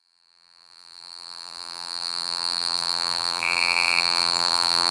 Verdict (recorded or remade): remade